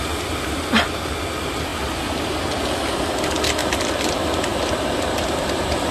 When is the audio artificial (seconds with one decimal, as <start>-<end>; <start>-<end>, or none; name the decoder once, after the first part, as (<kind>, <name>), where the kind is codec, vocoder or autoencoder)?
1.7-2.5 (vocoder, BigVGAN v2); 3.6-4.1